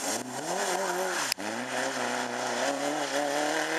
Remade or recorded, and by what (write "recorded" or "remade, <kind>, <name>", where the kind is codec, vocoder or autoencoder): recorded